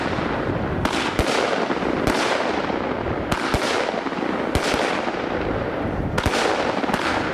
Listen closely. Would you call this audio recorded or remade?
recorded